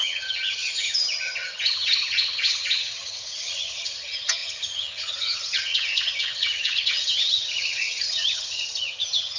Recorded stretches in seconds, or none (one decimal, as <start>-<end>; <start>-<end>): none